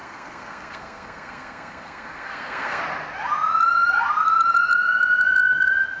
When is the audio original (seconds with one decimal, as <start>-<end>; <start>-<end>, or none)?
2.8-6.0